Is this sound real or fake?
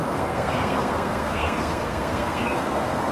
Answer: fake